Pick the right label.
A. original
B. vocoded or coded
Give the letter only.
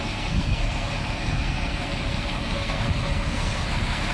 B